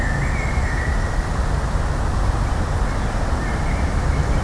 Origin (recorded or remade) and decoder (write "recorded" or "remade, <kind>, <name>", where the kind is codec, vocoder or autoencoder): recorded